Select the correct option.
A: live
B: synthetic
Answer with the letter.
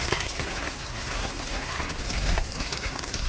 B